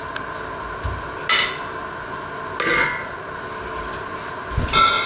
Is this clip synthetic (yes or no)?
no